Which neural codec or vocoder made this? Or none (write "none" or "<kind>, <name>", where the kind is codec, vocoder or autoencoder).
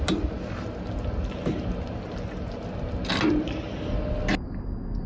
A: none